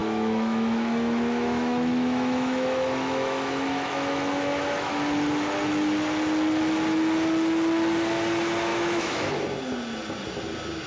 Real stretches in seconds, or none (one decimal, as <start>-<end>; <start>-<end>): 4.9-8.7; 9.3-10.9

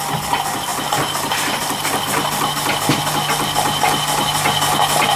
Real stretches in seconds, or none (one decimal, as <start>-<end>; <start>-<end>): 0.0-5.2

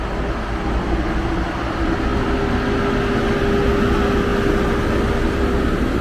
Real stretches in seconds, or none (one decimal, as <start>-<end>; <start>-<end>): 0.0-6.0

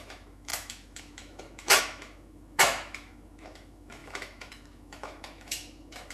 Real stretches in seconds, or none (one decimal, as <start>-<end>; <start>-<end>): none

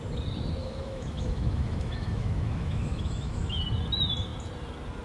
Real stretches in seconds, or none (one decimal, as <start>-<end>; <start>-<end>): 0.0-0.6; 3.6-5.0

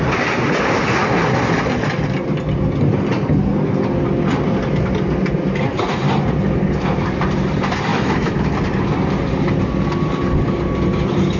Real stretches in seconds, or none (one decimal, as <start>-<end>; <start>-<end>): 0.0-7.9; 8.5-11.4

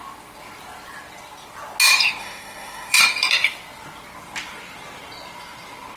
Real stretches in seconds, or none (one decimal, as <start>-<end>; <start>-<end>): 0.0-2.2; 3.0-6.0